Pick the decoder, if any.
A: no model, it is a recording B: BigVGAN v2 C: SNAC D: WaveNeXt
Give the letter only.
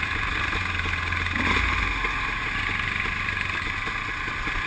A